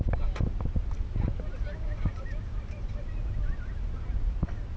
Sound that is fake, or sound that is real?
real